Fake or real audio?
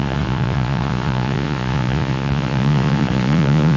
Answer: fake